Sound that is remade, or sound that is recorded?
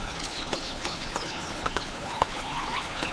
remade